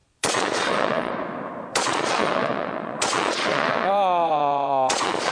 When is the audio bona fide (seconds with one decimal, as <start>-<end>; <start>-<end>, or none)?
1.1-1.7